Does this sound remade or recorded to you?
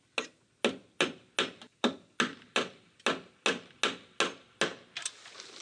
recorded